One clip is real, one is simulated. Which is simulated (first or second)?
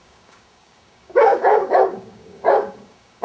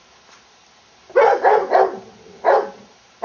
first